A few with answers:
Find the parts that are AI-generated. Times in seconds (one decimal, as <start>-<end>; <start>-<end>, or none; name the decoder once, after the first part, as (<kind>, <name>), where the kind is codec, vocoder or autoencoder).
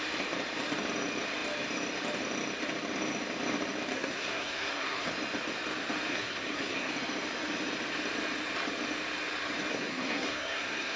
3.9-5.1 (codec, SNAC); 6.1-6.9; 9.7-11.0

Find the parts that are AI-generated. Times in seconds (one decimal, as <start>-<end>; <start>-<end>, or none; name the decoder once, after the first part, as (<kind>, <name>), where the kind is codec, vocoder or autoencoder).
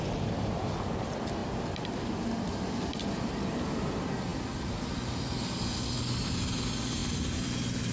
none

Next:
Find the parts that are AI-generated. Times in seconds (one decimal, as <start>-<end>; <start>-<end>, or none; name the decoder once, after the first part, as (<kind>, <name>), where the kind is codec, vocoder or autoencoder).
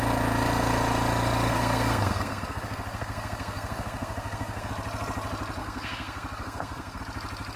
1.5-4.7 (codec, SNAC); 5.6-7.0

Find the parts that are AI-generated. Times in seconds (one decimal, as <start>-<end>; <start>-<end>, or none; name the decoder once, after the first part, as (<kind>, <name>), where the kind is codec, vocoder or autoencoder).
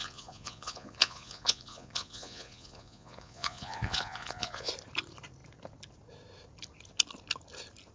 0.0-4.7 (vocoder, Vocos)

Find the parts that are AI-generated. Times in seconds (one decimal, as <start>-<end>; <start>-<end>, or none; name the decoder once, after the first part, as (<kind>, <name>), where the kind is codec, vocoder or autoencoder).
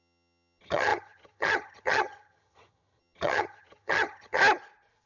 0.0-4.4 (vocoder, HiFi-GAN)